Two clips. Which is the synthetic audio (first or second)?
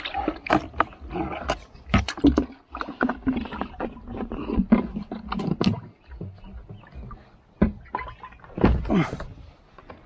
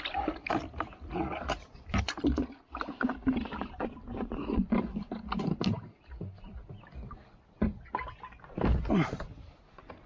second